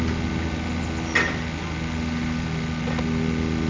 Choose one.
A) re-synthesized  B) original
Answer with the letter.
B